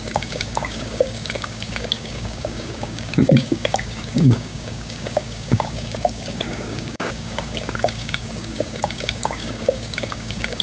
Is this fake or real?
fake